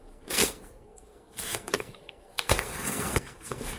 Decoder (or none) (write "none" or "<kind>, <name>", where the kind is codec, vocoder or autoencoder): codec, SNAC